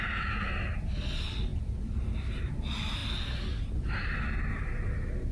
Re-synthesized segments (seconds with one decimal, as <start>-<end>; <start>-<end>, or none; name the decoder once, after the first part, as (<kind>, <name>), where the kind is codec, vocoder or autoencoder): none

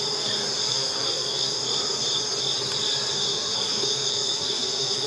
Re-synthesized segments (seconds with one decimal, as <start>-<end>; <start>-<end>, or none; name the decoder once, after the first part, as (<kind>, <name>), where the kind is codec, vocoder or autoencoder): 0.6-1.6 (codec, SNAC); 3.3-5.1

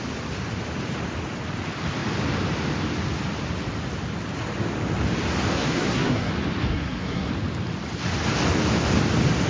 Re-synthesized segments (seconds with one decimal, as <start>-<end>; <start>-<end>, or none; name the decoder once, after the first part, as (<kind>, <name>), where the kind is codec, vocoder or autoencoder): 5.5-6.3 (codec, SNAC); 6.7-7.3

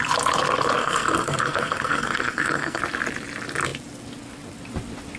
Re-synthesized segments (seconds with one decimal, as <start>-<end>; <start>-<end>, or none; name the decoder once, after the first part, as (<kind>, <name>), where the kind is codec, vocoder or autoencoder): 0.8-2.8 (codec, SNAC)